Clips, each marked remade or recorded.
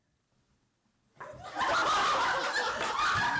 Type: recorded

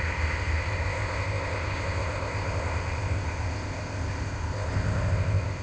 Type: remade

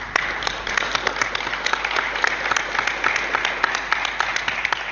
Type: recorded